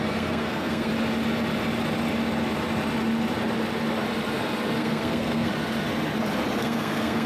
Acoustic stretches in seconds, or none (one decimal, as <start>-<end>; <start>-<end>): 0.9-4.8; 5.5-6.6